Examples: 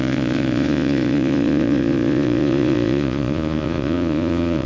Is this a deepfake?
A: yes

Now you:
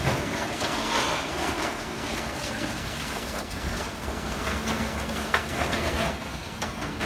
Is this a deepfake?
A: yes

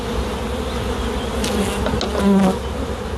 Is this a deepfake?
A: no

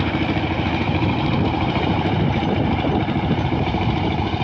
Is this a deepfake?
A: yes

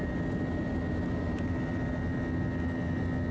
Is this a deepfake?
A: no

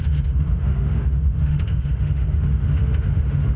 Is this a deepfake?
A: yes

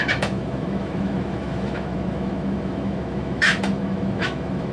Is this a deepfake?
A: yes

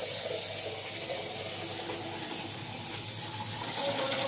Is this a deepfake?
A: no